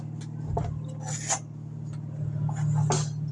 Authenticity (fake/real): real